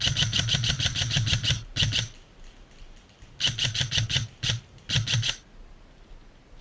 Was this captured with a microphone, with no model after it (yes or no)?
yes